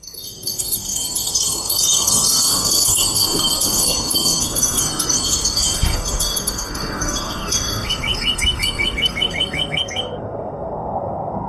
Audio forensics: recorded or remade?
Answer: remade